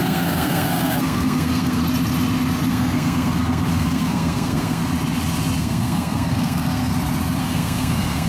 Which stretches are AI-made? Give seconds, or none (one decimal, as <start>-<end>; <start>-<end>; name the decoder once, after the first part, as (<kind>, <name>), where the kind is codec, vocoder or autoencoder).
0.0-1.8 (codec, SNAC); 2.7-4.8; 5.6-6.9; 7.4-8.3